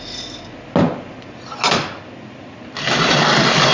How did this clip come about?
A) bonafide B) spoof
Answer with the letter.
A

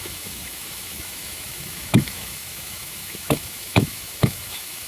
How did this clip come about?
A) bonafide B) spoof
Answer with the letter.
B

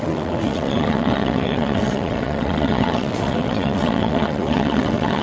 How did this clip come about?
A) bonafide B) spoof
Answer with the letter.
B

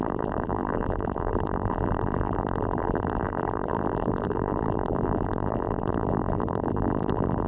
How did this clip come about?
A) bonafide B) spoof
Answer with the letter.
B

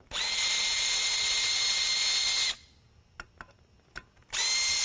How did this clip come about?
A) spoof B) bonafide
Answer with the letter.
B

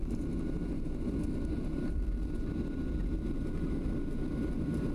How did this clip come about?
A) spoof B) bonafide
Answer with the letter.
B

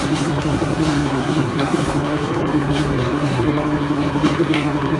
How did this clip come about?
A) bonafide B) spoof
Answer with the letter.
B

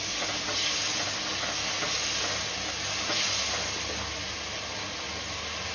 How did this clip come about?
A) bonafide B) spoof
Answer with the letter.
A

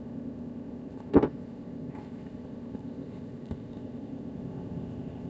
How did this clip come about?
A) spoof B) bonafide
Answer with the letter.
A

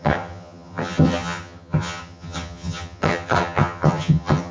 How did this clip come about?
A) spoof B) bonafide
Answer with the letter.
A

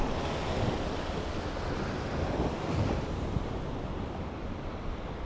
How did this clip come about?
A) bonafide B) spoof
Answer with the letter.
A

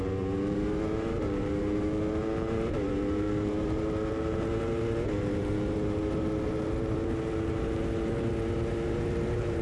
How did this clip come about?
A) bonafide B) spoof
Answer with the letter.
B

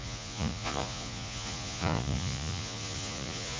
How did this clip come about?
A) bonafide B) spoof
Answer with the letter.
B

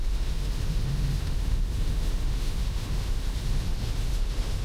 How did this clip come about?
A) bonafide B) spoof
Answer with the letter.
B